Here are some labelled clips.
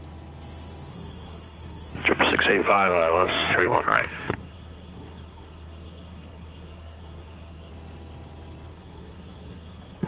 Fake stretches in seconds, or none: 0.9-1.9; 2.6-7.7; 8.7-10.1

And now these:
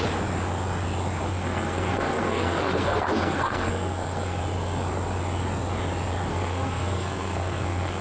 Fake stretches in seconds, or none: 1.3-4.4; 6.3-8.0

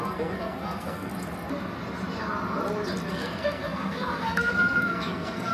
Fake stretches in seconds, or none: 0.0-1.1; 3.1-5.5